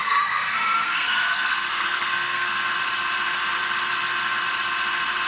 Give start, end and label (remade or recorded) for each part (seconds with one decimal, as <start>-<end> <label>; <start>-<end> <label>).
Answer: 0.0-2.6 remade; 2.6-5.3 recorded